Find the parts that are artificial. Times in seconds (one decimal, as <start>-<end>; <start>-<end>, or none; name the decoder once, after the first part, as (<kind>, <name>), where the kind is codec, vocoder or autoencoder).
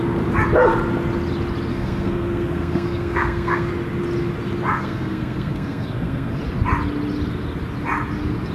1.7-3.7 (codec, SNAC); 4.7-6.4